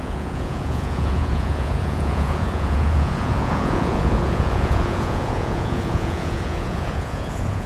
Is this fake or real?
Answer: fake